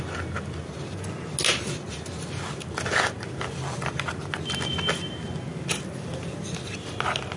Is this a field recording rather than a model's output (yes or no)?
yes